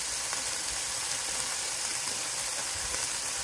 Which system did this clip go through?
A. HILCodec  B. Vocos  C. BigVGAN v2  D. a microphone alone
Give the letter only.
D